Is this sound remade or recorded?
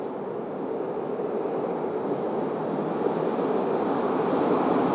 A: recorded